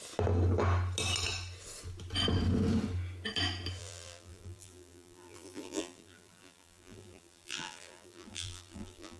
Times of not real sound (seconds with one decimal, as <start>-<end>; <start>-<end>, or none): 3.8-9.2